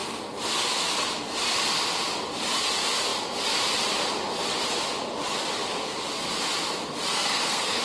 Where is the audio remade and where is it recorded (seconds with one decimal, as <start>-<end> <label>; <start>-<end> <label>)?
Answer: 0.0-7.1 recorded; 7.1-7.8 remade